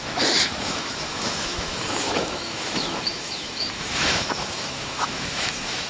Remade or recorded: remade